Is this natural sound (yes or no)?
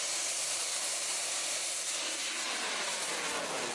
yes